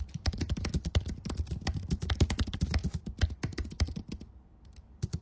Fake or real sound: real